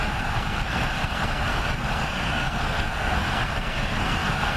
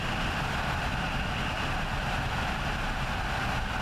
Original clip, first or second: second